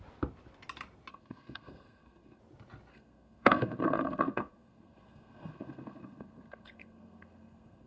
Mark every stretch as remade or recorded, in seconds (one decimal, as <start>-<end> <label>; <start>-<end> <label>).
0.0-1.1 recorded; 1.1-2.4 remade; 2.4-2.9 recorded; 2.9-7.9 remade